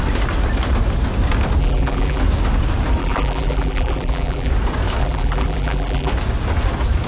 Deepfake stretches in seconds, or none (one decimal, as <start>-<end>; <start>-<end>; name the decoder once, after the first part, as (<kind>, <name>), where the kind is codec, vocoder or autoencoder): 1.6-2.2 (vocoder, BigVGAN v2); 3.0-4.5; 5.0-6.1